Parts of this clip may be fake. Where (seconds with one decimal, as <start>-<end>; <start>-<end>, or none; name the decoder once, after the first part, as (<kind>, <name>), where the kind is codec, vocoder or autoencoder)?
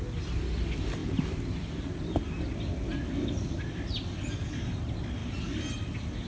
none